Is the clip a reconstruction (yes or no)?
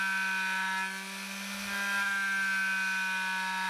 no